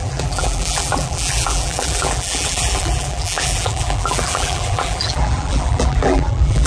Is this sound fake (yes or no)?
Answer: yes